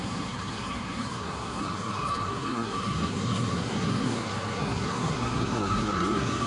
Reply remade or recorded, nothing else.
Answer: remade